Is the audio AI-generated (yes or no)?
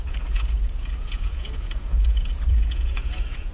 yes